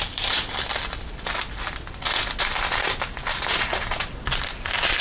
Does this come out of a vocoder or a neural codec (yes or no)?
no